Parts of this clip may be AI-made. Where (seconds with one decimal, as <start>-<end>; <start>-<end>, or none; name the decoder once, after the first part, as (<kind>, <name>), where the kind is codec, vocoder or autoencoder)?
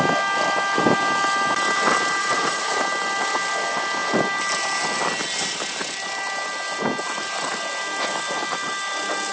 2.2-2.8 (vocoder, Vocos)